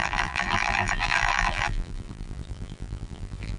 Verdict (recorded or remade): remade